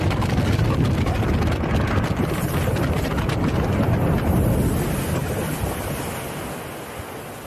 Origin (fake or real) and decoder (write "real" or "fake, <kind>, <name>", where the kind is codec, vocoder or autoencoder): real